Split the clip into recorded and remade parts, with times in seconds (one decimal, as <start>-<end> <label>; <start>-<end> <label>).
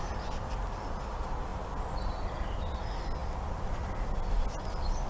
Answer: 0.0-5.1 recorded